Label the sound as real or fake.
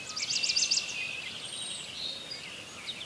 real